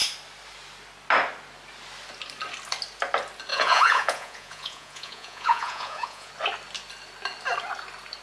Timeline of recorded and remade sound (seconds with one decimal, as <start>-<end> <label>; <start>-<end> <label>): 0.0-3.5 recorded; 3.5-6.3 remade; 6.3-8.2 recorded